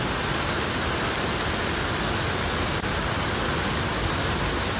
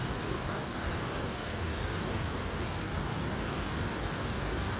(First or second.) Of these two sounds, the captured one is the first